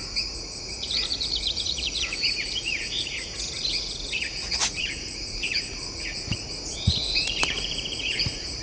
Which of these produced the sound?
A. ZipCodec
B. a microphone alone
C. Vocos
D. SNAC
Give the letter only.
C